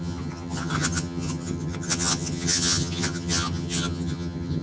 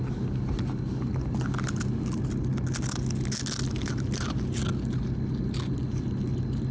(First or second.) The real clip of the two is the second